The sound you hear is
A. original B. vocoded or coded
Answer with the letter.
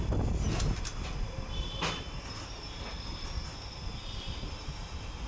A